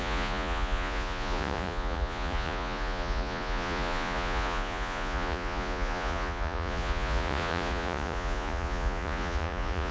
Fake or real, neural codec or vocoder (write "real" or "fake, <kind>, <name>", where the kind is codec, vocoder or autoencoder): fake, vocoder, Vocos